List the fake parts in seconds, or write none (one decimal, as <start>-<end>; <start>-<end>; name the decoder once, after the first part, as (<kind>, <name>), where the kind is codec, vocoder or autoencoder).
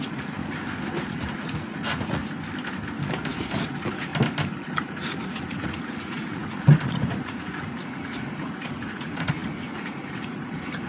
0.0-0.4 (vocoder, Vocos); 1.1-2.2; 3.6-4.1; 5.2-10.9